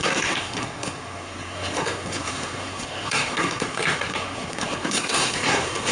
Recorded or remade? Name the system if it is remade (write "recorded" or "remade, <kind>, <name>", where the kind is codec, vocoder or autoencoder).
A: remade, codec, SNAC